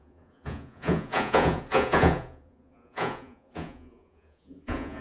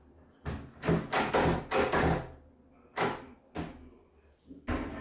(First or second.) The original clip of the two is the second